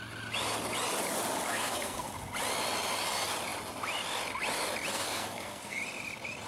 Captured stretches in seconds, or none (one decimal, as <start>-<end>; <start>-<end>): 0.0-1.5; 2.1-4.9; 5.8-6.5